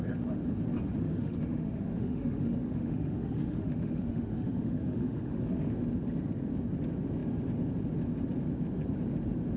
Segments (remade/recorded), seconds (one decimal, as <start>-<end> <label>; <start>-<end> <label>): 0.0-0.9 recorded; 0.9-5.7 remade; 5.7-9.6 recorded